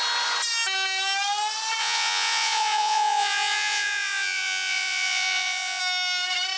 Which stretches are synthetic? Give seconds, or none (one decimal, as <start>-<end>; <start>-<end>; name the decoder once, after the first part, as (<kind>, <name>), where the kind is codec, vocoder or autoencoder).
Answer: 1.8-5.8 (vocoder, Vocos)

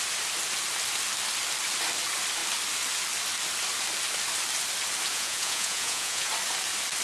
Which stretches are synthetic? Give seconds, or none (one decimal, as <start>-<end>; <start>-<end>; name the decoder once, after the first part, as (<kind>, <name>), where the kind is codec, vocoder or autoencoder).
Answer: 5.1-6.3 (vocoder, Vocos)